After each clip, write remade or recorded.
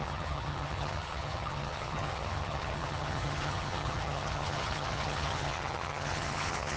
remade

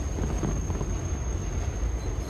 recorded